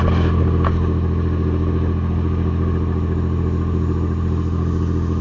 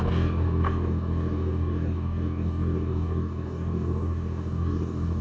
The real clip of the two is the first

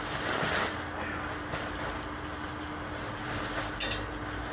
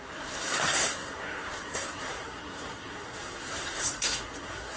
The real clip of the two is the first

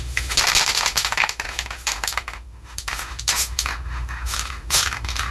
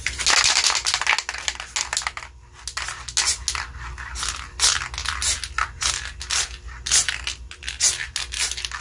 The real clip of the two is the second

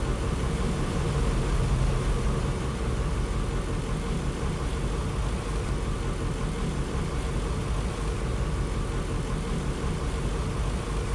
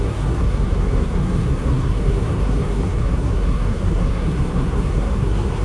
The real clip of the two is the first